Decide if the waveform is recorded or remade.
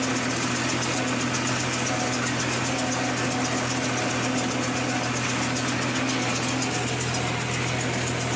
recorded